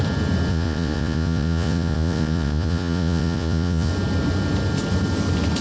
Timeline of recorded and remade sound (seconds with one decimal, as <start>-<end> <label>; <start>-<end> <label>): 0.0-0.5 recorded; 0.5-3.9 remade; 3.9-5.6 recorded